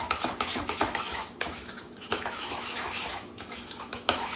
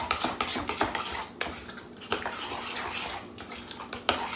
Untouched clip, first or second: second